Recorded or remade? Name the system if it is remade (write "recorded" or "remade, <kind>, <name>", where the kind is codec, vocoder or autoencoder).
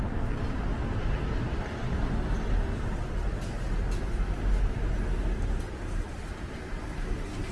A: recorded